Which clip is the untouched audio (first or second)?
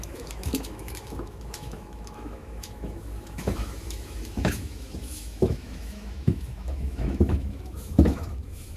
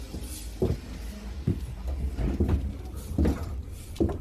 second